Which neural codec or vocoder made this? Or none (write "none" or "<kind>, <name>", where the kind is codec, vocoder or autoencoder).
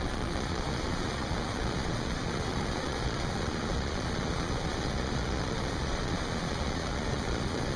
vocoder, Vocos